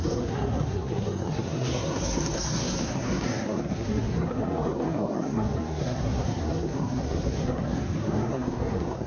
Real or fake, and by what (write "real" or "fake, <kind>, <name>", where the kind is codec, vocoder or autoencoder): fake, codec, SNAC